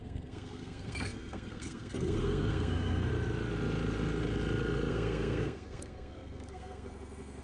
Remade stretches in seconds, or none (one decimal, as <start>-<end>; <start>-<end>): 0.0-3.1; 4.9-7.4